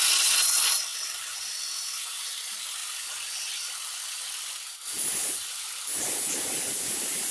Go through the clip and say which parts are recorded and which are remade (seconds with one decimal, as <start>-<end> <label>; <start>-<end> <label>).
0.0-7.3 recorded